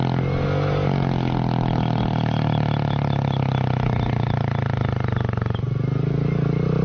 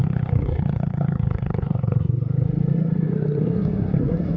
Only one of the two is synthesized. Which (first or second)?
second